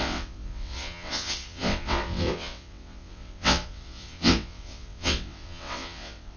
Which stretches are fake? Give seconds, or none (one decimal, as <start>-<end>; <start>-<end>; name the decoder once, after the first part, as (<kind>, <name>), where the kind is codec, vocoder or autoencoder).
0.0-6.4 (vocoder, WaveNeXt)